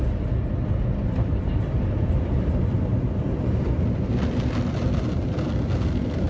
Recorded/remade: recorded